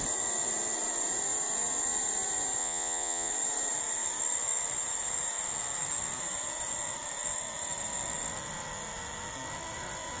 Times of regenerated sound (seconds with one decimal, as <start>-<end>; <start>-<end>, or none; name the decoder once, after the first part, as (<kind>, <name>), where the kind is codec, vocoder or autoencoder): 2.6-3.3 (vocoder, Vocos)